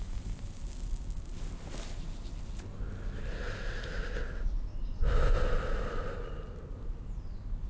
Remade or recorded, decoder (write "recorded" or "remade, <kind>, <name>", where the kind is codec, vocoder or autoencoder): recorded